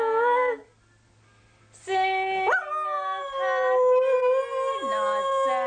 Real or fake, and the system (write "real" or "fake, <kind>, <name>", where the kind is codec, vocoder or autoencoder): real